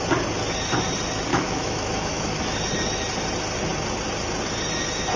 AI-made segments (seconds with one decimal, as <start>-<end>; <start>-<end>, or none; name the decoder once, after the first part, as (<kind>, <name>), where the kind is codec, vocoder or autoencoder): 1.3-2.4 (autoencoder, DAC-VAE)